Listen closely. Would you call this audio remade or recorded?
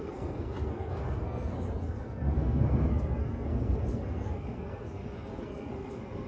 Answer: remade